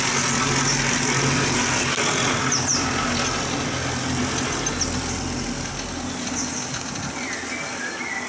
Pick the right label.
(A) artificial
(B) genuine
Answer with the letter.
B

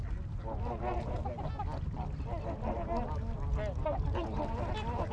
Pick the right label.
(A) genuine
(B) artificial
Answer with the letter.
A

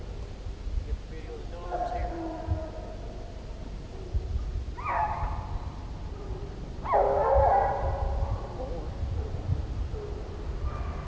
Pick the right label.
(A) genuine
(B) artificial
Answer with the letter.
A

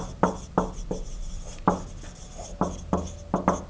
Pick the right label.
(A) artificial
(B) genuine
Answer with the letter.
B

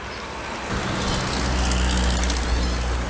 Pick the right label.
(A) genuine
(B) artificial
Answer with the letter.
A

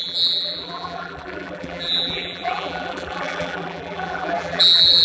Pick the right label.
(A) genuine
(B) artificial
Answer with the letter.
B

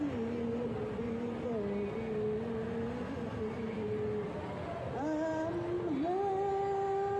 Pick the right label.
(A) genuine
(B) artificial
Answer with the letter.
A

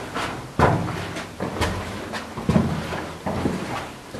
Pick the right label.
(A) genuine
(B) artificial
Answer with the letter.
B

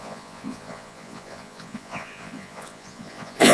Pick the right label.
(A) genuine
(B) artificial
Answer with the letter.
B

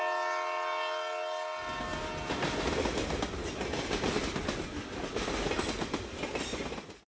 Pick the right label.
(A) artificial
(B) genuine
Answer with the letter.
B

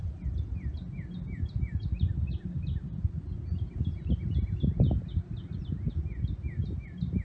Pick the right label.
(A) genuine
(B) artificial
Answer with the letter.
A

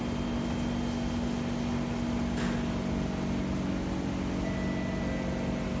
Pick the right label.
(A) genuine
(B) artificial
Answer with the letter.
A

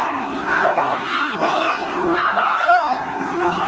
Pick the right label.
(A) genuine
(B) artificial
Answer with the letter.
B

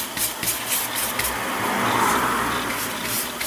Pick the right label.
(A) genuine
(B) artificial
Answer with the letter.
A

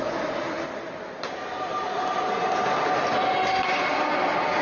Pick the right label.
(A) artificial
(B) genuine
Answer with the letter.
B